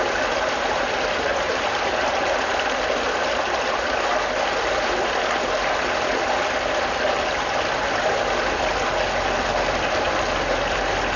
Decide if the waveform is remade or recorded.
recorded